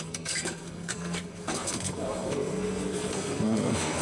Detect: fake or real fake